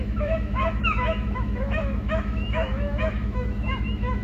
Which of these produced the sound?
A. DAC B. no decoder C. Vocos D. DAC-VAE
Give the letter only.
D